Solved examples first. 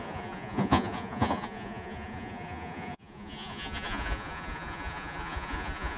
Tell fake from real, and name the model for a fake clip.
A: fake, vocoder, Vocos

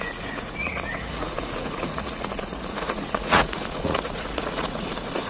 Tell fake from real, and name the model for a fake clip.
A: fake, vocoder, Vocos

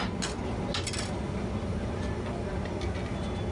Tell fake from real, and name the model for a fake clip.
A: real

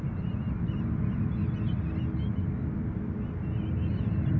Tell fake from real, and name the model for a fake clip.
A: real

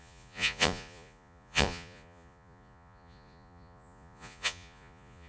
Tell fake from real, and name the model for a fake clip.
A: fake, vocoder, Vocos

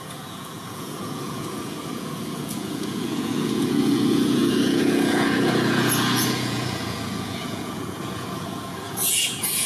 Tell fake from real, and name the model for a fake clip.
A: fake, vocoder, Vocos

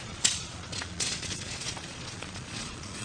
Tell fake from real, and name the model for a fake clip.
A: fake, vocoder, Vocos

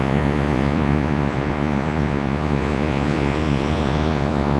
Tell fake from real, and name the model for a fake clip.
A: fake, vocoder, Vocos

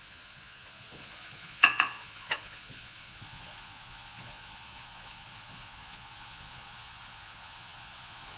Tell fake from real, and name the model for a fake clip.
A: fake, vocoder, Vocos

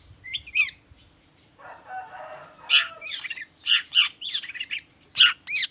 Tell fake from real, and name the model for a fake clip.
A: real